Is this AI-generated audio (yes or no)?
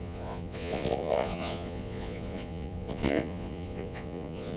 yes